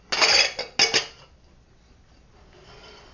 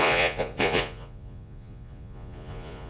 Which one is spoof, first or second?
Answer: second